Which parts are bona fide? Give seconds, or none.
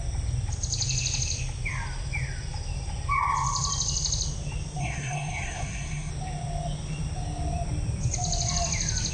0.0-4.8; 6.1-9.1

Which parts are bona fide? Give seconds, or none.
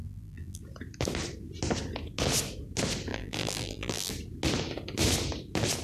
0.6-3.1; 4.1-5.8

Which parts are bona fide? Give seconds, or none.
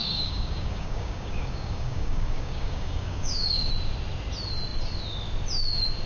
3.7-6.1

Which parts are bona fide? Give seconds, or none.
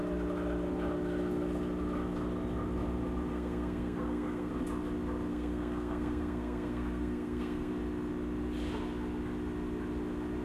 0.0-3.3; 4.5-5.3; 7.7-10.4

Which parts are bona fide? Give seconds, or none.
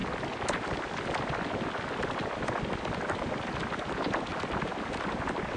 0.0-5.6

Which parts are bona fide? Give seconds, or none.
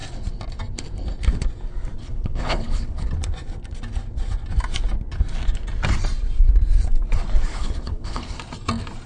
0.0-2.0; 3.1-7.5; 8.4-9.1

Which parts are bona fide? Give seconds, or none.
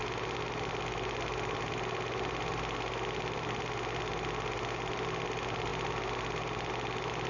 0.0-7.3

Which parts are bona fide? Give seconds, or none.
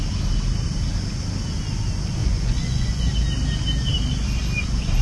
0.0-2.2; 3.1-5.0